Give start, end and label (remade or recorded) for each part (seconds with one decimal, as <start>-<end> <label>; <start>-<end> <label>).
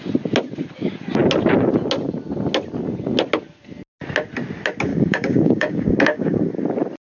0.0-4.9 recorded; 4.9-6.4 remade; 6.4-7.1 recorded